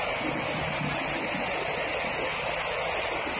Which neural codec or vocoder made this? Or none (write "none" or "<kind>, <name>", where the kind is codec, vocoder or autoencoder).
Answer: none